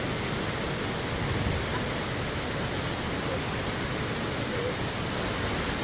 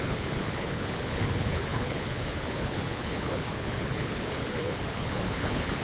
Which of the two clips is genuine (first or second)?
first